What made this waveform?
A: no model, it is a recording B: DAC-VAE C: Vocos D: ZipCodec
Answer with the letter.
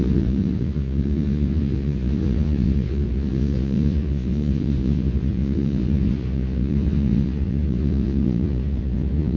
C